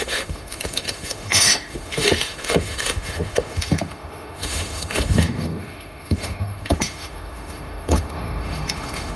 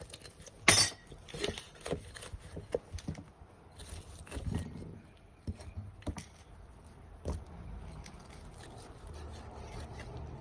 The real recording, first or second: second